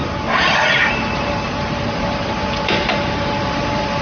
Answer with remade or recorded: remade